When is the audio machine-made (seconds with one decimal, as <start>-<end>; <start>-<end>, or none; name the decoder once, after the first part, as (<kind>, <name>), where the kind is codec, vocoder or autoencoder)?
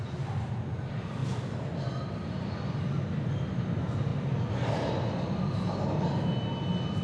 none